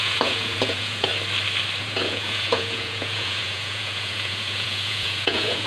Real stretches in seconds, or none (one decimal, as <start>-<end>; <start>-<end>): 1.1-1.8